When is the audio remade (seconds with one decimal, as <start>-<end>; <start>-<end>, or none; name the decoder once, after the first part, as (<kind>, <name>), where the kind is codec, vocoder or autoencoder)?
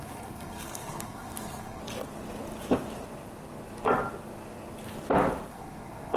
0.0-1.8 (codec, SNAC); 5.5-6.2